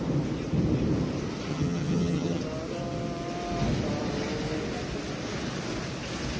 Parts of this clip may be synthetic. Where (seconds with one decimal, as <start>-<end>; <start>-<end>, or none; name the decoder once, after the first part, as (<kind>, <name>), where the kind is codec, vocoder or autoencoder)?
1.5-2.4 (vocoder, HiFi-GAN)